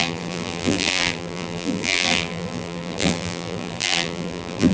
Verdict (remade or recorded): remade